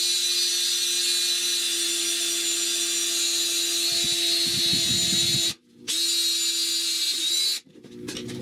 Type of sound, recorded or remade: recorded